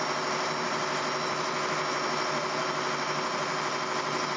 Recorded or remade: recorded